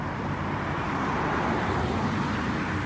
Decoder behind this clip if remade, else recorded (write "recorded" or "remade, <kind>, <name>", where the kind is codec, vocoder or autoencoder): recorded